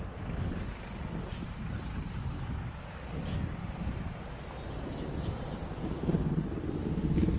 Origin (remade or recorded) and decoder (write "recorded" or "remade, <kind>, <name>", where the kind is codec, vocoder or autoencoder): recorded